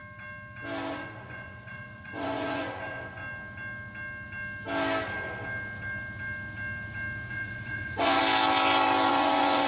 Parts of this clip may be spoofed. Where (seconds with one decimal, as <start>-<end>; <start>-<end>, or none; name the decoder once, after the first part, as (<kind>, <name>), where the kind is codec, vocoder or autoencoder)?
0.9-3.2 (vocoder, Vocos); 7.3-8.2; 9.1-9.7